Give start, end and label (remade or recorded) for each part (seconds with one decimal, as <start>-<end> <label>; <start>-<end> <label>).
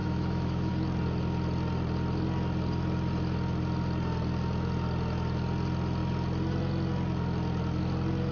0.0-0.7 remade; 0.7-8.3 recorded